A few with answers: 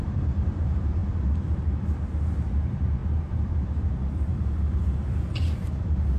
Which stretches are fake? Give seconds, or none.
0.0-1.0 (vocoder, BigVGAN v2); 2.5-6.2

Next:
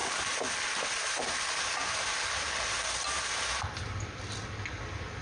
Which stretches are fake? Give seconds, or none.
0.0-2.2 (vocoder, BigVGAN v2)

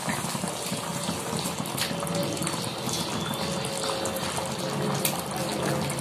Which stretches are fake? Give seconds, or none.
none

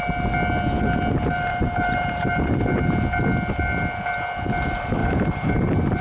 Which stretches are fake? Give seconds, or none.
1.5-2.6 (vocoder, BigVGAN v2); 5.0-5.5

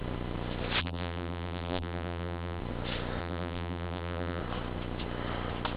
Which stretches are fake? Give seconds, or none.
0.8-2.6 (vocoder, BigVGAN v2); 3.2-4.4